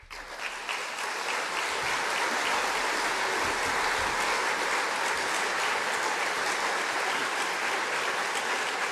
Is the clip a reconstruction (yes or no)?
no